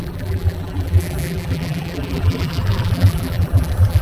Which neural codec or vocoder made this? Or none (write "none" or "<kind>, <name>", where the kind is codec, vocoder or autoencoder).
vocoder, BigVGAN v2